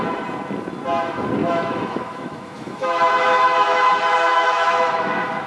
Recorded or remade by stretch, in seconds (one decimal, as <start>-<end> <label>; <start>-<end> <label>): 0.0-1.4 recorded; 1.4-3.9 remade; 3.9-4.3 recorded; 4.3-5.1 remade; 5.1-5.5 recorded

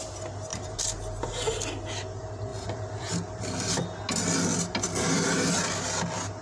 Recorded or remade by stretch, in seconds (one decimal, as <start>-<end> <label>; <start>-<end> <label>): 0.0-0.5 recorded; 0.5-1.3 remade; 1.3-2.5 recorded; 2.5-3.7 remade; 3.7-6.4 recorded

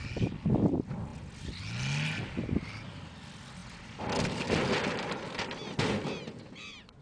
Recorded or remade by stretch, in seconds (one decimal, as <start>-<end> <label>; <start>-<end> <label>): 0.0-7.0 recorded

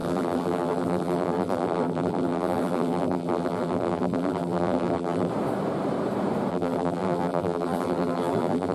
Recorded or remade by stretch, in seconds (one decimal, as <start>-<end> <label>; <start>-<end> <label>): 0.0-5.3 remade; 5.3-6.5 recorded; 6.5-8.7 remade